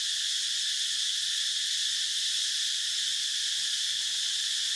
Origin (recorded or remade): recorded